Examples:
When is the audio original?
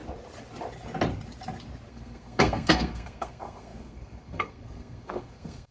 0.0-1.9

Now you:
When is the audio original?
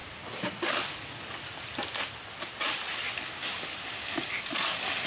0.0-5.1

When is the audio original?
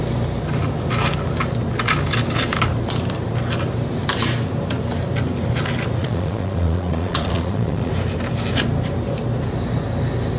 0.0-6.0; 7.9-10.4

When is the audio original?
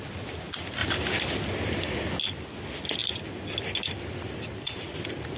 0.0-5.4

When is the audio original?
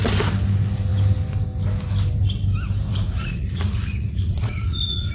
0.0-2.9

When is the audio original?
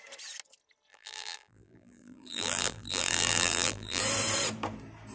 0.0-0.9; 4.0-5.1